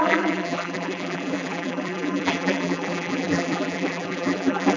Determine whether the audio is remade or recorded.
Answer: remade